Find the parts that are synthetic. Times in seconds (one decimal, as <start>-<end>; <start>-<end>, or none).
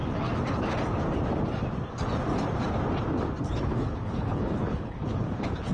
3.4-5.7